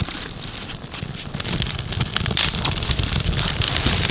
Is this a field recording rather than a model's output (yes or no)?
yes